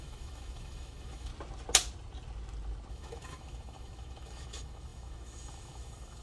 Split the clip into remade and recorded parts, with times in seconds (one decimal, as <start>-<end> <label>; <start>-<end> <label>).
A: 0.0-1.3 remade; 1.3-2.9 recorded; 2.9-6.2 remade